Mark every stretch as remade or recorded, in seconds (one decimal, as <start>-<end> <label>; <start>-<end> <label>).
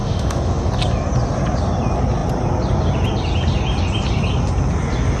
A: 0.0-0.7 remade; 0.7-5.2 recorded